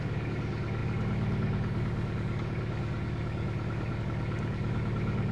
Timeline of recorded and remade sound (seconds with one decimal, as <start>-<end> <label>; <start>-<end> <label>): 0.0-5.3 remade